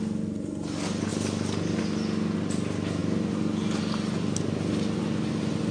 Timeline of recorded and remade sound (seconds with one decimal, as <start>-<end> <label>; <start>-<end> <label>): 0.0-5.7 recorded